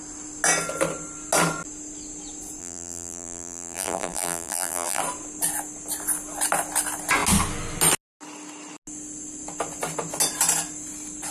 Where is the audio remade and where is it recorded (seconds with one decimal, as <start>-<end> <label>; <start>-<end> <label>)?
0.0-2.6 recorded; 2.6-5.0 remade; 5.0-11.3 recorded